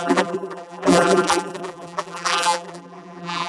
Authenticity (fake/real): fake